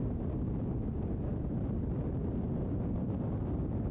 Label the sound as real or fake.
real